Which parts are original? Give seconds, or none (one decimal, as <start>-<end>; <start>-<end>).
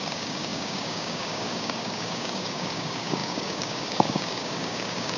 none